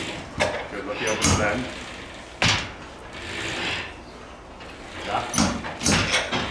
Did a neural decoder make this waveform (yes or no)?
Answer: no